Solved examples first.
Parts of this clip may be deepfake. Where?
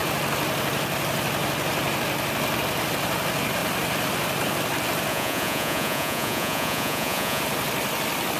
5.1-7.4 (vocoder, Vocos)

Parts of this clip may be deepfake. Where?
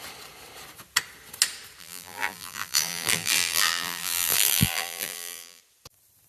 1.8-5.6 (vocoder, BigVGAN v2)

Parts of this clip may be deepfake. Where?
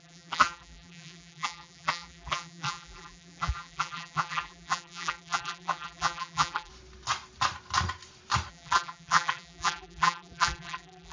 0.0-6.7 (vocoder, BigVGAN v2); 8.5-11.1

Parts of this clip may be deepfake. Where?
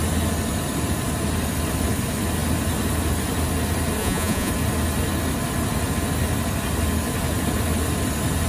4.0-4.5 (vocoder, Vocos)